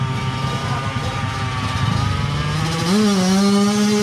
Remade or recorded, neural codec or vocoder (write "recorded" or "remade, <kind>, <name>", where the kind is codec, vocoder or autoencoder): recorded